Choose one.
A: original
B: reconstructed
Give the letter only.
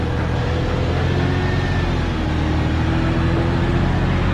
A